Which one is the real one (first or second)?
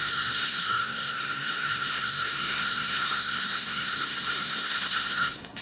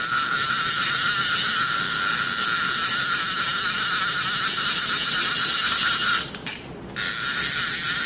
second